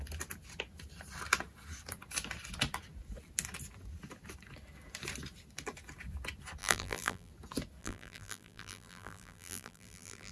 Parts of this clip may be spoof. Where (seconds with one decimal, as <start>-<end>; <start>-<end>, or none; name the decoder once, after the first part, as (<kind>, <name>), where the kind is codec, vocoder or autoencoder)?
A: 6.6-7.3 (vocoder, BigVGAN v2); 7.8-10.3